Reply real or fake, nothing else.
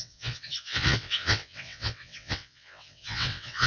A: fake